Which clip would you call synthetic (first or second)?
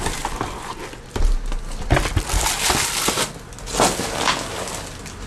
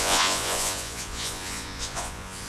second